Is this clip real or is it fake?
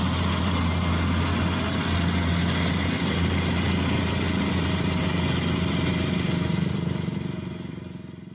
real